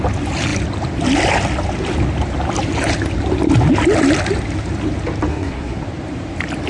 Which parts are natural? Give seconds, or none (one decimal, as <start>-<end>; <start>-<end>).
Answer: 0.0-5.3; 5.8-6.7